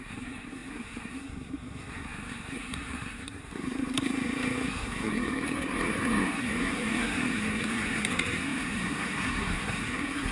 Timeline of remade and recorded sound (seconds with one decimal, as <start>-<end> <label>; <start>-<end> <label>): 0.0-10.3 remade

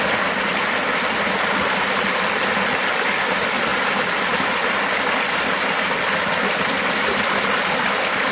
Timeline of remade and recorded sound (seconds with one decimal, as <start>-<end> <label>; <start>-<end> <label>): 0.0-8.3 recorded

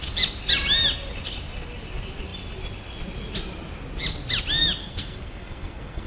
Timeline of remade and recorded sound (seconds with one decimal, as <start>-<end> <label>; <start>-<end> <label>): 0.0-4.8 recorded; 4.8-6.1 remade

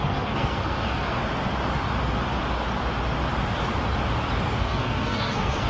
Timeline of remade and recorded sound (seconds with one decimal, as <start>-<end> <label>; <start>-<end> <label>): 0.0-1.2 remade; 1.2-4.6 recorded; 4.6-5.7 remade

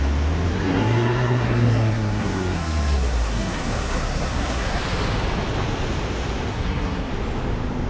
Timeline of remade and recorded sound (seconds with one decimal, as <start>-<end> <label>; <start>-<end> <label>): 0.0-0.5 recorded; 0.5-4.8 remade; 4.8-6.5 recorded; 6.5-7.1 remade; 7.1-7.9 recorded

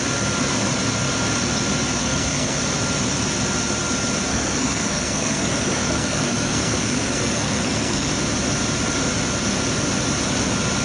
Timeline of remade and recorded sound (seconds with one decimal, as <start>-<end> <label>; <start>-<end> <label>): 0.0-2.0 recorded; 2.0-2.6 remade; 2.6-4.3 recorded; 4.3-8.1 remade; 8.1-10.8 recorded

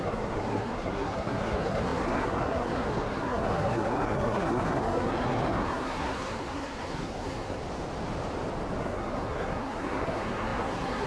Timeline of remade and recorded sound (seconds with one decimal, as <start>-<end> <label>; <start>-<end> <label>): 0.0-7.6 remade; 7.6-8.8 recorded; 8.8-11.1 remade

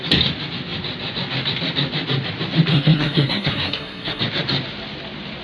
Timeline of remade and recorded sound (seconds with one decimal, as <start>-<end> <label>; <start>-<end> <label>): 0.0-2.7 recorded; 2.7-4.2 remade; 4.2-5.4 recorded